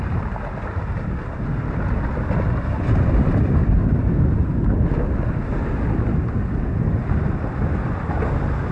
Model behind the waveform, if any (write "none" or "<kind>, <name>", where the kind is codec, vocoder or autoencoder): none